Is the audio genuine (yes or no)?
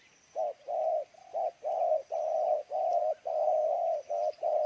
yes